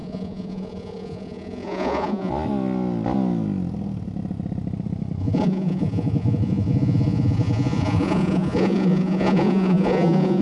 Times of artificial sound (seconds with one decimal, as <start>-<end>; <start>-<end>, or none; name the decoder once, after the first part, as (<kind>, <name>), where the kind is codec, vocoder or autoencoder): 0.0-2.3 (vocoder, Vocos); 5.2-10.4